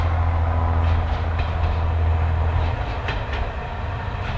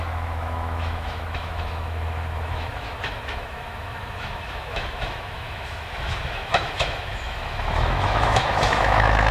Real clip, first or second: first